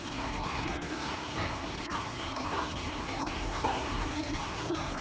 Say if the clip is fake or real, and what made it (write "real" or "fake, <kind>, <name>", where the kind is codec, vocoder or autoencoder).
fake, codec, SNAC